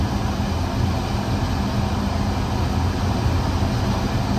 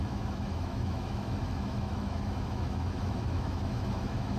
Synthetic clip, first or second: second